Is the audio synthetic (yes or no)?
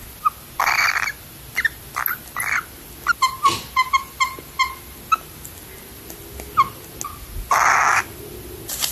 no